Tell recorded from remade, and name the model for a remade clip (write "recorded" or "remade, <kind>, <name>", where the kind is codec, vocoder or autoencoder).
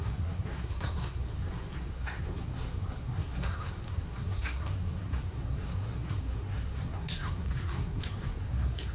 remade, codec, SNAC